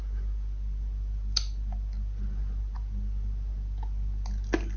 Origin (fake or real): real